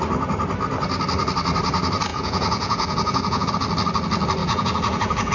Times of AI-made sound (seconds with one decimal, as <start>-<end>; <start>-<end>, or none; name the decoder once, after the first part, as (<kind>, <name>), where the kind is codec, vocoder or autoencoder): 2.1-3.5 (vocoder, Vocos); 4.4-5.3